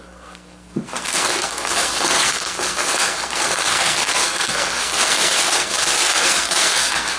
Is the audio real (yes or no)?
no